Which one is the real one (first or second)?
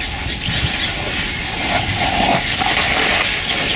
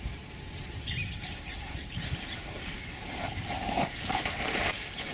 first